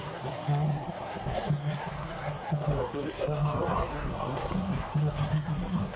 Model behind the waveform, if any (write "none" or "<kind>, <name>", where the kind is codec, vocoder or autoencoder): codec, SNAC